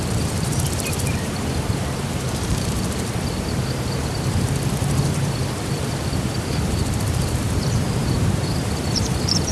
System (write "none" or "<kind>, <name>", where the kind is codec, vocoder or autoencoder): vocoder, BigVGAN v2